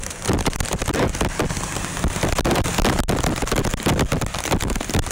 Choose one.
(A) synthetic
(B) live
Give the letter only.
B